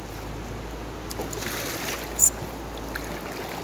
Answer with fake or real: real